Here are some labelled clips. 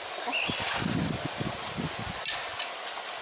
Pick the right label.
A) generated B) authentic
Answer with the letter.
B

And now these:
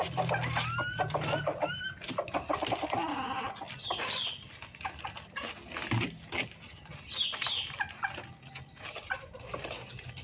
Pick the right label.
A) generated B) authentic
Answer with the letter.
B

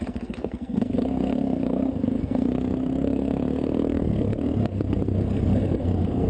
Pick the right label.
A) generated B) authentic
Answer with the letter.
A